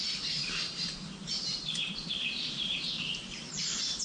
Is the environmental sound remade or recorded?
remade